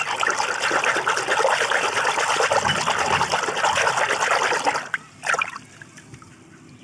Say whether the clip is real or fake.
real